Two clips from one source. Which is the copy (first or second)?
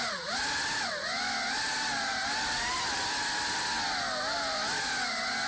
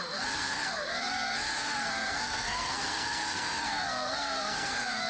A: second